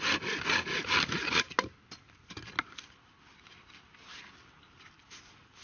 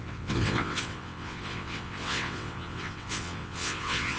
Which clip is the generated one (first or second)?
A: second